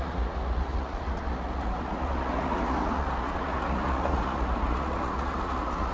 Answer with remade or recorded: remade